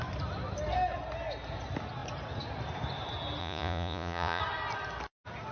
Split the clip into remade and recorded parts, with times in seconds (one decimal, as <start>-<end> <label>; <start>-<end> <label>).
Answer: 0.0-3.4 recorded; 3.4-4.4 remade; 4.4-5.5 recorded